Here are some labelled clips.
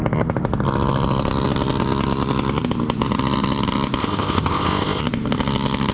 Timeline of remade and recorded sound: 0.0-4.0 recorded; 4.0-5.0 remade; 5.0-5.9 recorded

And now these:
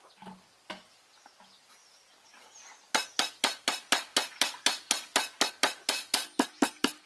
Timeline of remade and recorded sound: 0.0-7.1 recorded